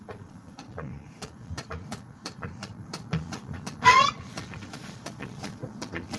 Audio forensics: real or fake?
fake